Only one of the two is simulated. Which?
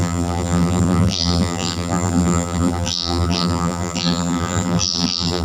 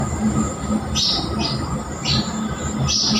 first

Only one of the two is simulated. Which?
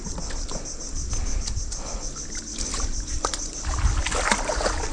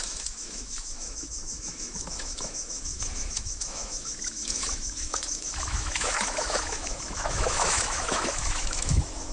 second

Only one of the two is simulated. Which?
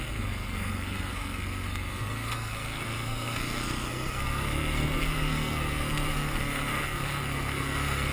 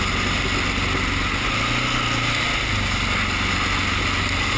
first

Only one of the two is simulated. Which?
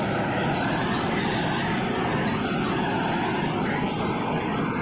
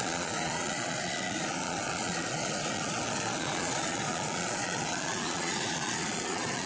second